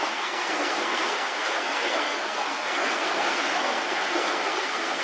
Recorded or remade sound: remade